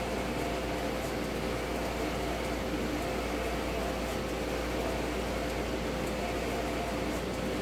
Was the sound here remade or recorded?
recorded